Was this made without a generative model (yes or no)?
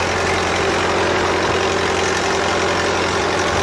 yes